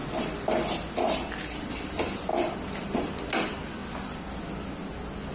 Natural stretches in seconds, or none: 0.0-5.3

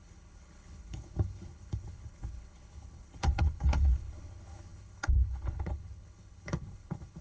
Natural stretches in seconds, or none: none

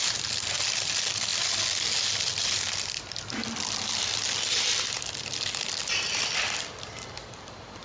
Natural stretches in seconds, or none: 0.0-7.8

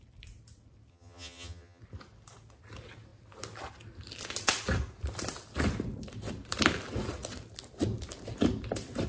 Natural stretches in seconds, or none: 0.0-0.9; 1.8-9.1